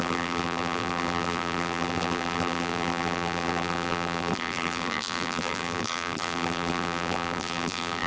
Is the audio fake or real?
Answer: fake